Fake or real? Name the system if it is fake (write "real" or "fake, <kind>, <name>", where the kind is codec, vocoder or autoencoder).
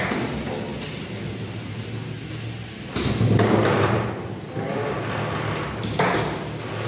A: real